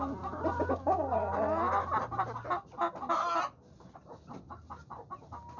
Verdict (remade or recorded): recorded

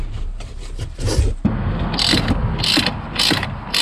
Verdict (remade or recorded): recorded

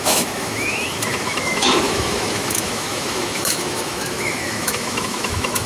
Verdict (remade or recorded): remade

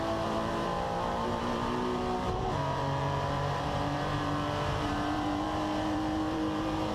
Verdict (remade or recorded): remade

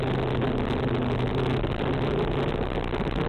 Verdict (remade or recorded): recorded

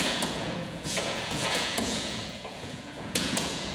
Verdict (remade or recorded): remade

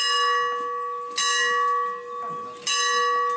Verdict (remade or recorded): recorded